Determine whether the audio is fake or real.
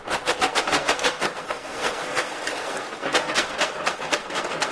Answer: fake